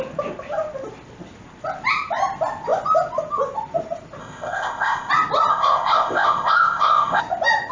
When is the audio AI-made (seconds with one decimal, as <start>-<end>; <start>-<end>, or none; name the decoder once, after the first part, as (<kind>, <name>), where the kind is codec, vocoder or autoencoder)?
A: 4.2-5.1 (codec, ZipCodec); 5.5-7.2